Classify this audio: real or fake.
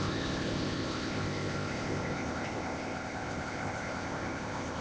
fake